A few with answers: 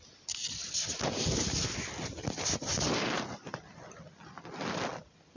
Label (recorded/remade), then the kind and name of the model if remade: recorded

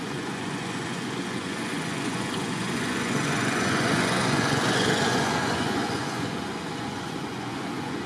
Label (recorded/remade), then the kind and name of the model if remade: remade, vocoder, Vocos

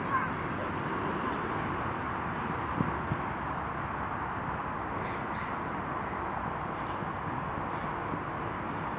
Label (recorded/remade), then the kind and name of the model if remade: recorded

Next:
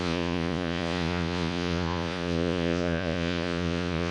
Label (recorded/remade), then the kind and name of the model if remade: remade, vocoder, Vocos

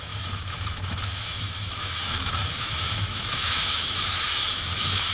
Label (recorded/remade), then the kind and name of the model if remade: remade, autoencoder, DAC-VAE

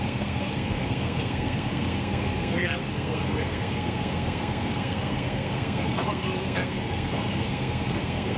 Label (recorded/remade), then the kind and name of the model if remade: remade, codec, SNAC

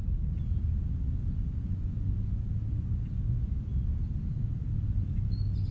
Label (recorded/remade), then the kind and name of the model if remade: recorded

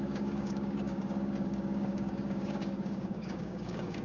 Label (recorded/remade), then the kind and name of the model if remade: remade, codec, DAC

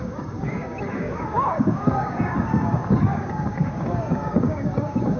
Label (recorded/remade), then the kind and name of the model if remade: remade, codec, DAC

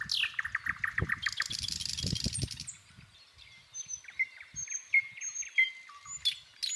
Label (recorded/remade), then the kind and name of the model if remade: recorded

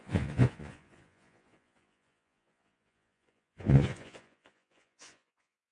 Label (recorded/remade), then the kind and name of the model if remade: remade, vocoder, Vocos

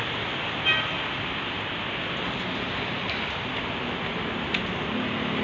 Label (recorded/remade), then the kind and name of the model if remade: recorded